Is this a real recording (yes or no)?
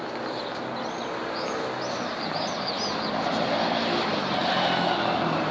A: yes